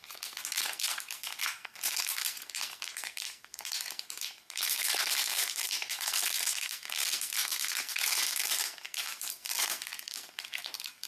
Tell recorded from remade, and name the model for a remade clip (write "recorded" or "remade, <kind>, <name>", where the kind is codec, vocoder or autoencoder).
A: remade, codec, SNAC